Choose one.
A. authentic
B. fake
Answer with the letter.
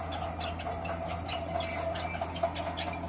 A